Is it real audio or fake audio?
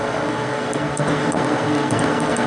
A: fake